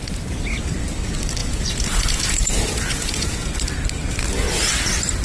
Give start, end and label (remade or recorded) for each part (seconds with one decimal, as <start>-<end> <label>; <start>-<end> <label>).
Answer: 0.0-1.4 recorded; 1.4-3.5 remade; 3.5-5.2 recorded